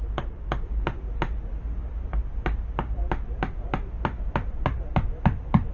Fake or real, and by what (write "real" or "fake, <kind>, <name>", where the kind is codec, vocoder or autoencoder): real